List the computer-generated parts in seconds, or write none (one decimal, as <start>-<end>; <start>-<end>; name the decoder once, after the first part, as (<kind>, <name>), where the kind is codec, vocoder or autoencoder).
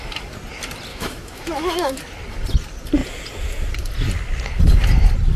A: 0.9-2.0 (autoencoder, DAC-VAE)